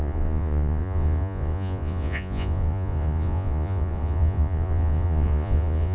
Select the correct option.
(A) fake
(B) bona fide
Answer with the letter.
A